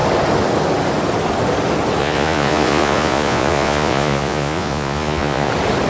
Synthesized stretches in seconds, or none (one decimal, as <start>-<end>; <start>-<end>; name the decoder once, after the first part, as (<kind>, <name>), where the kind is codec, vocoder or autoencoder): 2.0-5.5 (vocoder, Vocos)